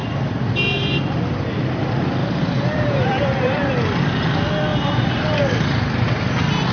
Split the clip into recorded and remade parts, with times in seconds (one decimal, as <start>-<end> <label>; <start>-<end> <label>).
0.0-2.2 recorded; 2.2-3.7 remade; 3.7-4.7 recorded; 4.7-5.5 remade; 5.5-6.7 recorded

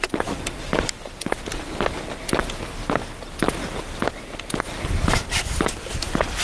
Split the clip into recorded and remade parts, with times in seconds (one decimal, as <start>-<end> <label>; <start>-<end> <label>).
0.0-6.4 recorded

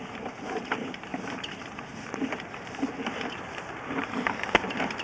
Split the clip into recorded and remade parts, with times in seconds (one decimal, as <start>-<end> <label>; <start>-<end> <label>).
0.0-5.0 remade

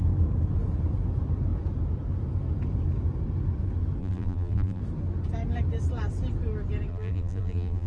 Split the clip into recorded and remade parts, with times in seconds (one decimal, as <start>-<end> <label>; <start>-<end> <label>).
0.0-4.0 recorded; 4.0-4.8 remade; 4.8-6.9 recorded; 6.9-7.9 remade

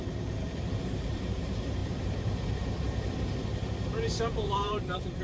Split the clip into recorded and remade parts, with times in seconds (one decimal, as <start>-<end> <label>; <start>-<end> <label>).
0.0-3.4 remade; 3.4-4.4 recorded; 4.4-5.2 remade

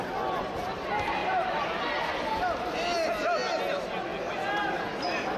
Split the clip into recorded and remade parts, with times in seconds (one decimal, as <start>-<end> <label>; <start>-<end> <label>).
0.0-1.2 recorded; 1.2-1.8 remade; 1.8-5.4 recorded

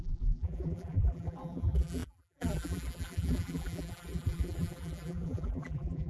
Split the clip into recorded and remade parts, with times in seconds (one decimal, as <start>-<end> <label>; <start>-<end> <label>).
0.0-6.1 remade